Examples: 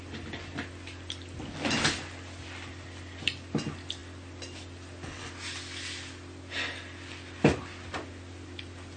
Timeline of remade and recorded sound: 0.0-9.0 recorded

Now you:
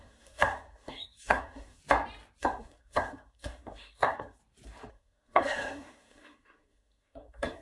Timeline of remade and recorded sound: 0.0-1.8 remade; 1.8-2.4 recorded; 2.4-4.4 remade; 4.4-4.9 recorded; 4.9-7.6 remade

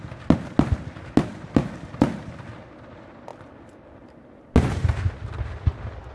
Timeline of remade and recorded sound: 0.0-6.1 recorded

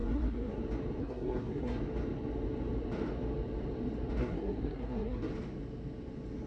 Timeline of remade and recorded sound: 0.0-0.6 remade; 0.6-1.0 recorded; 1.0-1.8 remade; 1.8-4.2 recorded; 4.2-5.3 remade; 5.3-6.5 recorded

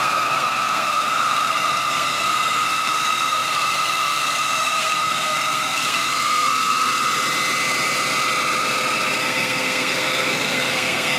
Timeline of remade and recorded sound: 0.0-6.9 remade; 6.9-9.2 recorded; 9.2-11.2 remade

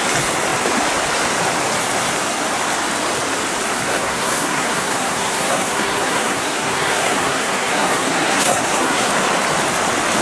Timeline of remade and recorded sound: 0.0-3.9 recorded; 3.9-9.1 remade; 9.1-10.2 recorded

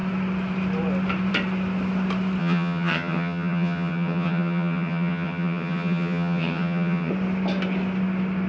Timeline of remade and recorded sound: 0.0-2.4 recorded; 2.4-7.1 remade; 7.1-8.5 recorded

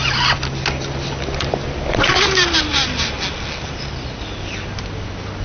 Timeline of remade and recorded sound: 0.0-5.4 recorded